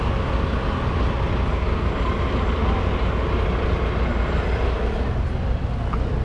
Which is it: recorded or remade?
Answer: recorded